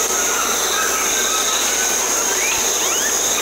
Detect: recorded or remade recorded